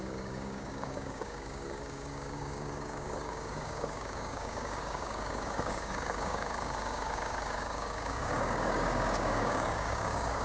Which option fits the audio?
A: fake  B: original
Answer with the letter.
A